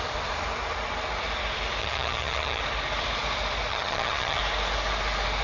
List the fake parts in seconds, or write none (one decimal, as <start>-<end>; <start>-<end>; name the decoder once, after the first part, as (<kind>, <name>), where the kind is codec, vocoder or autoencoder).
1.8-2.6 (vocoder, HiFi-GAN); 3.7-4.4